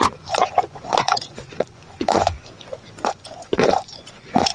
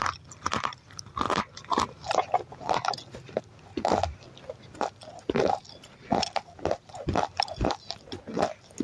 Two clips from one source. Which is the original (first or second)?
second